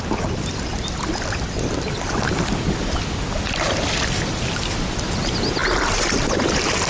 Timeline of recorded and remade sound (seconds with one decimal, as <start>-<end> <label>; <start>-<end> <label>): 0.0-6.9 recorded